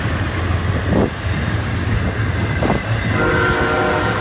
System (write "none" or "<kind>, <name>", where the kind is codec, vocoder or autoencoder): none